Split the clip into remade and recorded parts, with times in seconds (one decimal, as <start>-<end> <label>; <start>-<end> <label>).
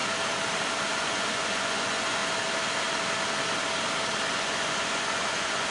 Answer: 0.0-0.9 recorded; 0.9-2.2 remade; 2.2-4.3 recorded; 4.3-5.7 remade